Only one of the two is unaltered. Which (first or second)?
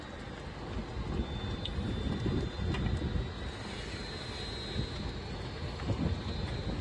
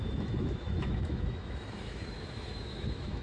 first